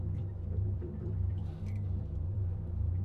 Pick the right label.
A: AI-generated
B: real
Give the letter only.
A